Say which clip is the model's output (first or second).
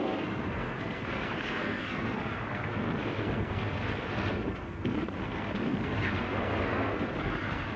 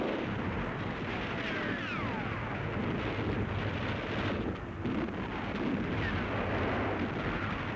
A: first